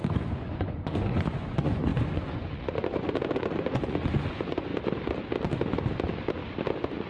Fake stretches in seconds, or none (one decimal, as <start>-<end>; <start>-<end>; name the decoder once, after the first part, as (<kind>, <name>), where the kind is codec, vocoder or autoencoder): 0.0-4.7 (vocoder, Vocos)